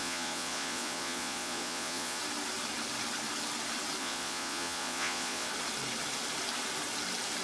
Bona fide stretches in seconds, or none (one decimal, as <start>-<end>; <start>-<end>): 2.2-4.0; 5.5-7.4